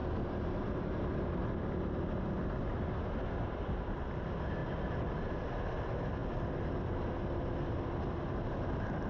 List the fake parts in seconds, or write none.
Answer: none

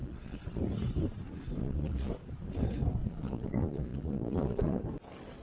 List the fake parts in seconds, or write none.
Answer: 0.0-0.6 (vocoder, Vocos); 1.6-2.1; 3.0-4.8

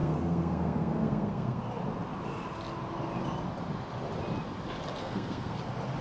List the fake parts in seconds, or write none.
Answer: 0.0-1.6 (codec, SNAC); 5.0-5.6

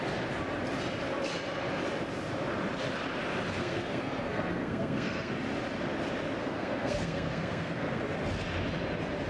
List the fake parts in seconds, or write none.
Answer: 3.6-5.3 (codec, SNAC); 6.4-8.0

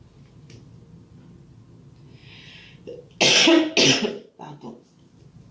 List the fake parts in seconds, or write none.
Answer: none

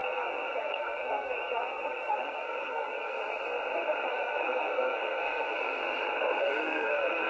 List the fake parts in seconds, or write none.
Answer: 0.0-3.2 (codec, SNAC); 4.1-5.8; 6.4-7.3

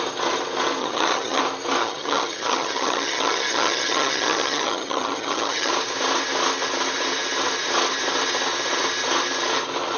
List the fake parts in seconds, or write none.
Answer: 0.8-1.4 (vocoder, HiFi-GAN); 1.8-5.7

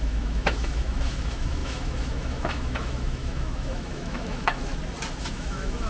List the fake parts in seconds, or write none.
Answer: 0.0-4.7 (autoencoder, DAC-VAE); 5.2-5.9